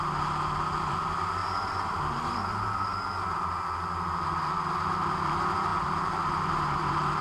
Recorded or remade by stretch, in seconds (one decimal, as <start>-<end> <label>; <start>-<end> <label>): 0.0-1.4 recorded; 1.4-2.0 remade; 2.0-5.7 recorded; 5.7-6.5 remade; 6.5-7.2 recorded